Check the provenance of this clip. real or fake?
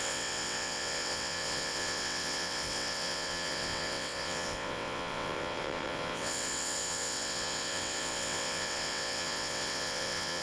fake